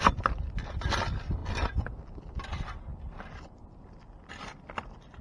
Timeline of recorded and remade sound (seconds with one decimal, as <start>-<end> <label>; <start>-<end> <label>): 0.0-5.2 recorded